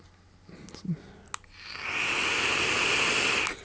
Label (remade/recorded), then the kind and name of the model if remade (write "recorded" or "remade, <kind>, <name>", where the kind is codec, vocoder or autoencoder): recorded